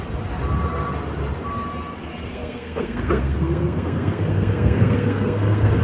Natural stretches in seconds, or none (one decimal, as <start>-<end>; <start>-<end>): 0.0-2.3